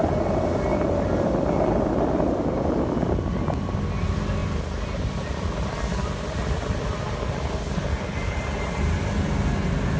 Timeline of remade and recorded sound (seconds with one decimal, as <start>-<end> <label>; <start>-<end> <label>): 0.0-0.7 recorded; 0.7-3.0 remade; 3.0-4.4 recorded; 4.4-5.8 remade; 5.8-10.0 recorded